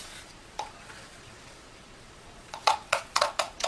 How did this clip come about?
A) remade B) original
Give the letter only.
A